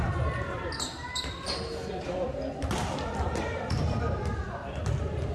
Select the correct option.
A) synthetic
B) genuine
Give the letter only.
B